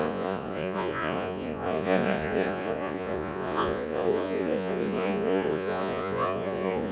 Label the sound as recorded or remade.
remade